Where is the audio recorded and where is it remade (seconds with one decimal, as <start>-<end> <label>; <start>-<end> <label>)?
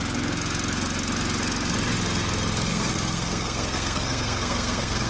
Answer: 0.0-2.7 recorded; 2.7-5.1 remade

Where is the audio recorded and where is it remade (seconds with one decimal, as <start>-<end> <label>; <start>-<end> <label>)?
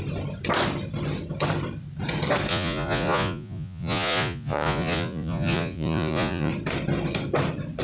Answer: 0.0-2.5 recorded; 2.5-6.5 remade; 6.5-7.8 recorded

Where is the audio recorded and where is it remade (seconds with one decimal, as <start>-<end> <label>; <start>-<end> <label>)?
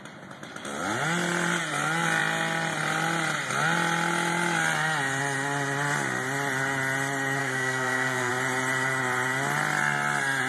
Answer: 0.0-7.4 recorded; 7.4-8.3 remade; 8.3-10.5 recorded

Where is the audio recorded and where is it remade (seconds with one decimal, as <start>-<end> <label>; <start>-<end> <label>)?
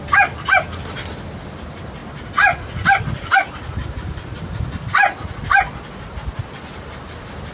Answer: 0.0-3.8 recorded; 3.8-4.4 remade; 4.4-7.5 recorded